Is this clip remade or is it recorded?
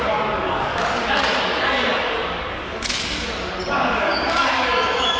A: remade